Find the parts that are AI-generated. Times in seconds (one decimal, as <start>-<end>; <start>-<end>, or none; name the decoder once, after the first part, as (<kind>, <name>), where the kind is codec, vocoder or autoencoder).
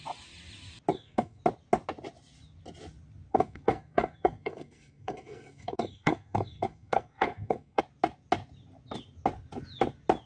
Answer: 0.9-1.4 (codec, SNAC); 3.3-7.8